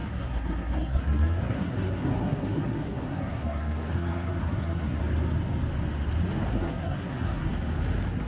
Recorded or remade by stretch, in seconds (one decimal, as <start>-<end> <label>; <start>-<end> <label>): 0.0-5.0 remade; 5.0-6.5 recorded; 6.5-7.5 remade; 7.5-8.3 recorded